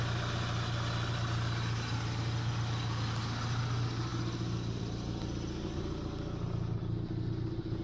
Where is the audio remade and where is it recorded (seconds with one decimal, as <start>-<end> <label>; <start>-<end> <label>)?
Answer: 0.0-7.8 recorded